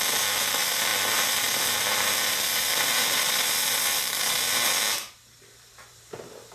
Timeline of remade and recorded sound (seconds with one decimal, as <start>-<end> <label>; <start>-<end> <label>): 0.0-0.9 recorded; 0.9-4.8 remade; 4.8-6.5 recorded

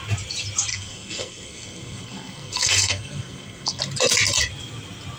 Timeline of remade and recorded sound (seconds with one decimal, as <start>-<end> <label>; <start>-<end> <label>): 0.0-0.7 recorded; 0.7-3.8 remade; 3.8-5.2 recorded